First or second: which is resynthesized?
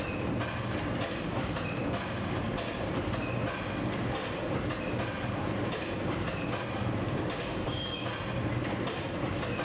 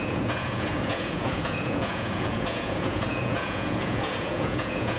second